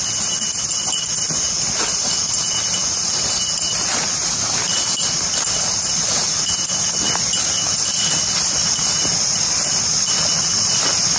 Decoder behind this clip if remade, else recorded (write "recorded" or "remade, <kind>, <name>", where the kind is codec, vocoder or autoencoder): recorded